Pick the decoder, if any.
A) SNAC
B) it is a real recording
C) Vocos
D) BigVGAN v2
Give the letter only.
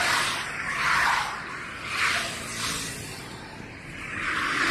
B